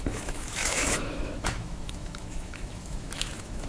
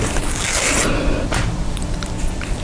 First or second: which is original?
second